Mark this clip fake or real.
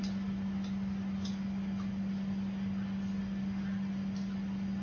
real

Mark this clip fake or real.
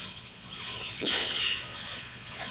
fake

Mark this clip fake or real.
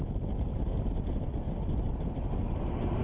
real